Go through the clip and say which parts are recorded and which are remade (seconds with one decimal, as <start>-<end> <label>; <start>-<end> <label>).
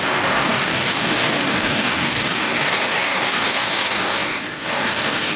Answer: 0.0-5.4 remade